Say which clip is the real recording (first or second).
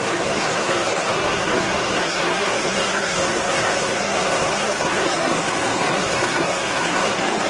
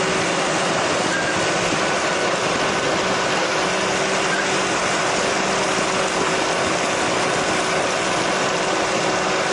second